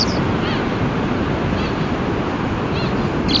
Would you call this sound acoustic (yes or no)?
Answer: yes